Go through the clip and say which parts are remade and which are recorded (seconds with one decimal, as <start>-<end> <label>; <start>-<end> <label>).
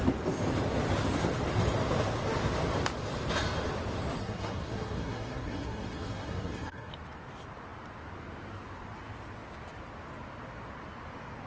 0.0-4.2 recorded; 4.2-6.9 remade; 6.9-11.5 recorded